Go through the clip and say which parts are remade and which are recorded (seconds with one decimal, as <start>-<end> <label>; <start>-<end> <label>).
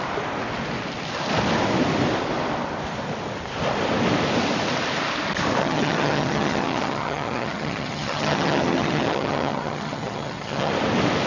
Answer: 0.0-5.6 recorded; 5.6-10.7 remade; 10.7-11.3 recorded